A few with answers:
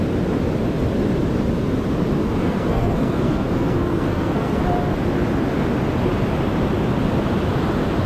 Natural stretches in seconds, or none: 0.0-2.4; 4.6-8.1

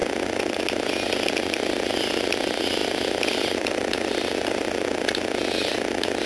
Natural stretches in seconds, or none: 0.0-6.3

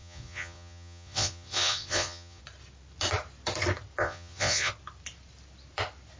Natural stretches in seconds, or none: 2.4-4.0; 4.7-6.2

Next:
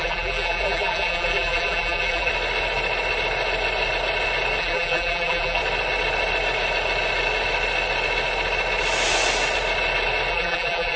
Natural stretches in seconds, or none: 2.3-4.6; 5.6-10.3

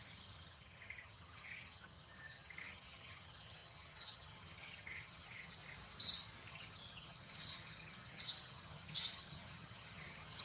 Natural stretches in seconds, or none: 5.6-6.5